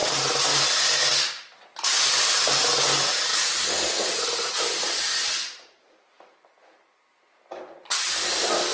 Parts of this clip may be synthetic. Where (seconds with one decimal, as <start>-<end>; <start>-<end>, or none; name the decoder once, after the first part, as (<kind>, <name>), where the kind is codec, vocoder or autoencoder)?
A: 0.0-0.5 (vocoder, BigVGAN v2); 3.3-8.1